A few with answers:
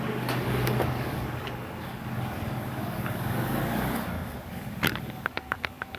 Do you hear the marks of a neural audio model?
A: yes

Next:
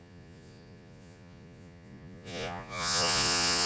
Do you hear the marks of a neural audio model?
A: yes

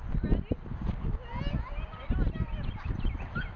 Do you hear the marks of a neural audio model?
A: no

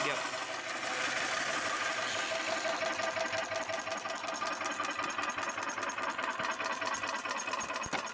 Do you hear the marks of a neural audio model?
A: no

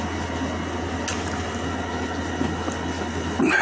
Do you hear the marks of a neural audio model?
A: no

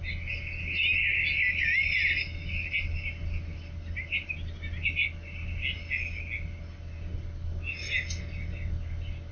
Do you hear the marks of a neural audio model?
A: no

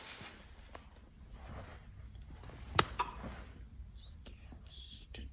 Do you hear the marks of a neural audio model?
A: no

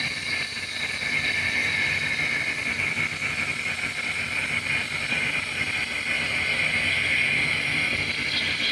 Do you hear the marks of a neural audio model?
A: no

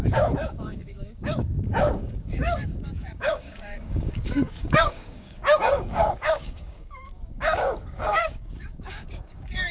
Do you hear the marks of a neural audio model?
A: yes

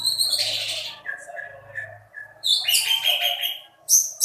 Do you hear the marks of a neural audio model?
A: yes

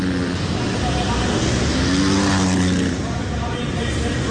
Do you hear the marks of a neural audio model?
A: no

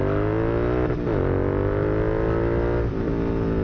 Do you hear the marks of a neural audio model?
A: no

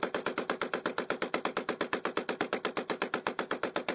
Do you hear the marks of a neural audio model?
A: no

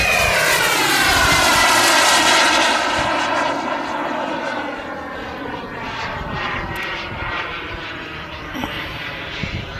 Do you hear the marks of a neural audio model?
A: no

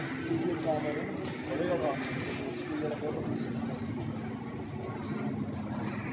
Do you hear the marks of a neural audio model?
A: no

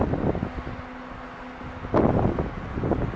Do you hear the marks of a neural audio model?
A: no